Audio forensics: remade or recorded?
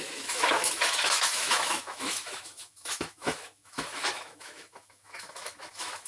remade